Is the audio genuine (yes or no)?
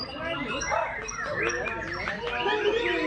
yes